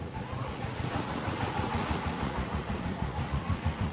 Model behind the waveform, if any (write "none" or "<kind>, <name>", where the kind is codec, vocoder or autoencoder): vocoder, Vocos